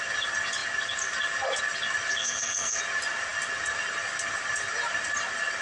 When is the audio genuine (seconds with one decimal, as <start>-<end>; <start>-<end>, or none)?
0.0-2.2; 2.8-5.6